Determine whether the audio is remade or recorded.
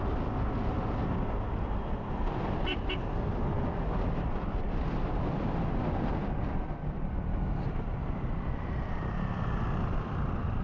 recorded